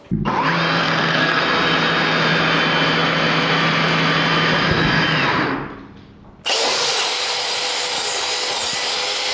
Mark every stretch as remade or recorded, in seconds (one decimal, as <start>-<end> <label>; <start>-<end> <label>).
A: 0.0-0.8 recorded; 0.8-1.4 remade; 1.4-9.3 recorded